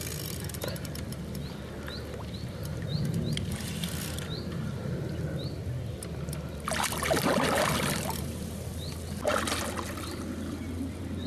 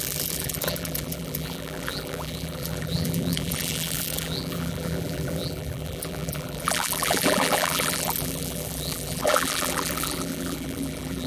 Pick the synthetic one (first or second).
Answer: second